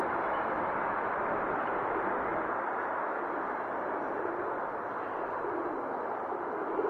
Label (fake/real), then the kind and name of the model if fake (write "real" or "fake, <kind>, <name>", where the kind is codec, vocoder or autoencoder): fake, vocoder, BigVGAN v2